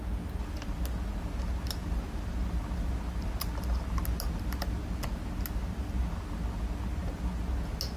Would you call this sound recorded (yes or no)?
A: yes